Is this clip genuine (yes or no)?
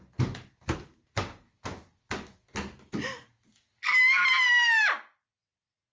yes